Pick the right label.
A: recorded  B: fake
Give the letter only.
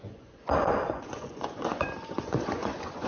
B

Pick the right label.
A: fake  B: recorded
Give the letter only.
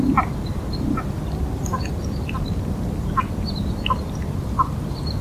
A